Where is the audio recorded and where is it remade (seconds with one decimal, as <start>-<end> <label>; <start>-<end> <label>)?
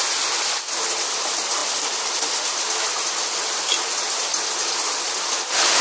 0.0-5.8 recorded